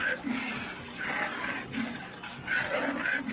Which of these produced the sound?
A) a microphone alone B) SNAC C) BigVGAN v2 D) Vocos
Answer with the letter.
A